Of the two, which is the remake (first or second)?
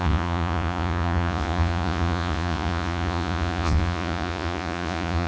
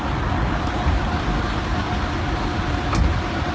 first